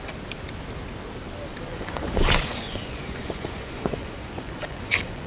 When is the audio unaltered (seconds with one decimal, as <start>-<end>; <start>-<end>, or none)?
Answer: 0.0-1.7